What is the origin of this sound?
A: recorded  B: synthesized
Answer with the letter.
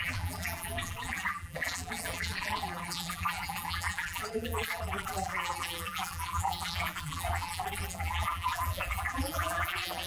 B